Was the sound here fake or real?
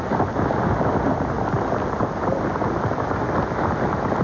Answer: real